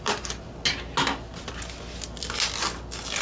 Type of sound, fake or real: real